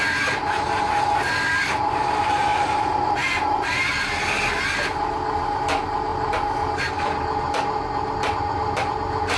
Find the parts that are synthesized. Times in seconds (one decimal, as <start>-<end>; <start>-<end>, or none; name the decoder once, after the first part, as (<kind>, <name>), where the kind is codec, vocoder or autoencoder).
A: none